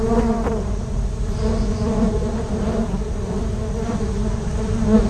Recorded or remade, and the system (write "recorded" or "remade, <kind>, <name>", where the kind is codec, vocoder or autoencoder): recorded